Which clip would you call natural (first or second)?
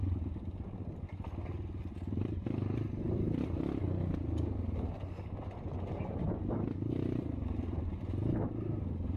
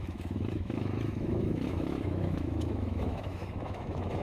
first